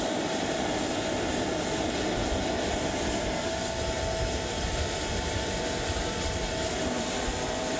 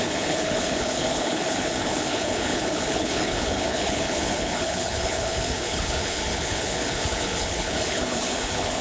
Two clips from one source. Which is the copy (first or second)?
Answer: second